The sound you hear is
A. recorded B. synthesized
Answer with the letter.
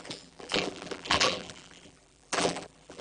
B